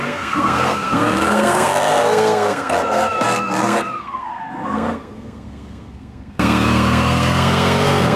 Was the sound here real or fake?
fake